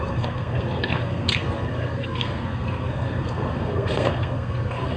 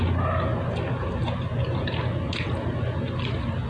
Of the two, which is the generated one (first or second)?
first